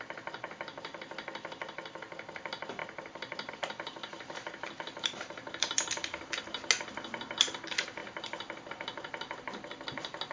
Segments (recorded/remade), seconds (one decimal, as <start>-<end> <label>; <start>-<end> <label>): 0.0-10.3 recorded